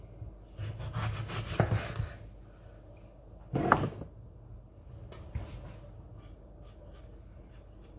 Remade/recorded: recorded